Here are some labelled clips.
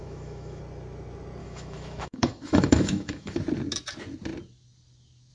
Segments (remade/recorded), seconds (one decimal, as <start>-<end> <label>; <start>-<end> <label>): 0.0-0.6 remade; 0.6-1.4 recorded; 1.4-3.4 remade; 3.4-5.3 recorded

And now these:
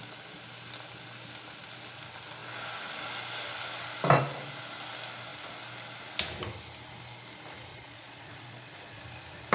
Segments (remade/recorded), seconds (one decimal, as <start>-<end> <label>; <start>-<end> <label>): 0.0-7.7 recorded; 7.7-9.0 remade; 9.0-9.5 recorded

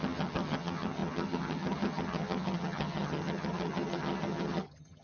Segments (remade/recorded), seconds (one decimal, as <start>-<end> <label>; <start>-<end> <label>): 0.0-5.0 remade

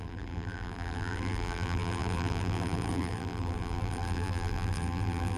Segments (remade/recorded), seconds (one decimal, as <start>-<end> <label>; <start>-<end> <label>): 0.0-5.4 remade

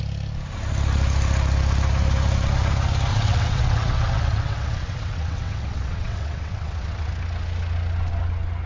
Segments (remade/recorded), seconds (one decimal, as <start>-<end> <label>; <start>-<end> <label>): 0.0-3.1 recorded; 3.1-7.1 remade; 7.1-8.7 recorded

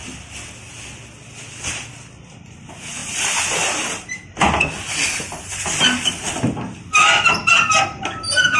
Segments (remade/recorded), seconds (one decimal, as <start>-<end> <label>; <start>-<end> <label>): 0.0-8.6 recorded